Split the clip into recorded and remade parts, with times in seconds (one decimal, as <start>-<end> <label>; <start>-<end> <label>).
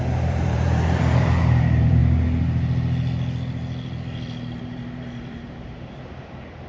0.0-2.0 remade; 2.0-4.6 recorded; 4.6-6.7 remade